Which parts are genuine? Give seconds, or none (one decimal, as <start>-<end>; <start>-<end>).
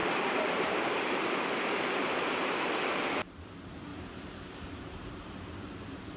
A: 3.5-3.9; 5.3-6.2